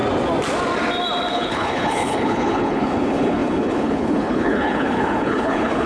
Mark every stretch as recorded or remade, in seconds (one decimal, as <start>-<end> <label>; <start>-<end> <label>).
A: 0.0-1.3 recorded; 1.3-5.9 remade